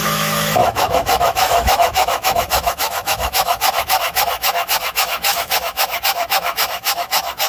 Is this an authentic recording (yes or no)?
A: no